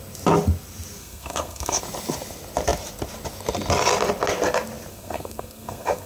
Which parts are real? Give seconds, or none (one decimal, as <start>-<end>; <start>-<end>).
0.0-1.0; 1.8-4.9